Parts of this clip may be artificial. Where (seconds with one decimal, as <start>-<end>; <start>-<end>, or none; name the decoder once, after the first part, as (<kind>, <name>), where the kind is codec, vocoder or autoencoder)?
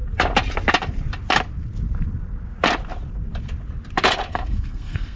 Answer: 4.3-5.2 (codec, SNAC)